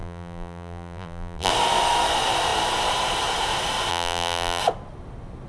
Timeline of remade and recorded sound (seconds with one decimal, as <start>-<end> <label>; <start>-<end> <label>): 0.0-1.5 remade; 1.5-3.9 recorded; 3.9-4.6 remade; 4.6-5.5 recorded